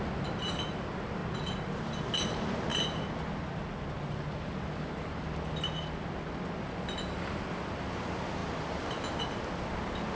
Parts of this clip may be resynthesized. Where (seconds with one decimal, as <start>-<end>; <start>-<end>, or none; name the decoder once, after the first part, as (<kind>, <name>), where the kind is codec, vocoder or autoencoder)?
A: none